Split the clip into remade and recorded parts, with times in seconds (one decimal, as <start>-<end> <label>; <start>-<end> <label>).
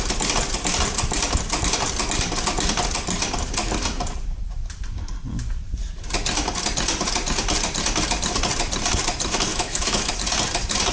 0.0-9.5 recorded; 9.5-10.1 remade; 10.1-10.9 recorded